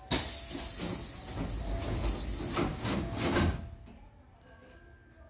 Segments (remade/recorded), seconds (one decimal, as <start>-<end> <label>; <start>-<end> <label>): 0.0-2.7 recorded; 2.7-3.6 remade; 3.6-5.3 recorded